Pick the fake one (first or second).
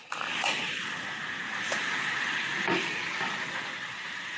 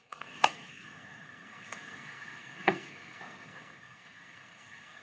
second